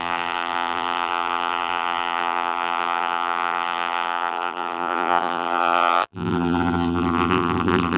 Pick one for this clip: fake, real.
fake